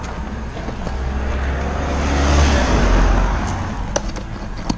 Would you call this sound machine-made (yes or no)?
no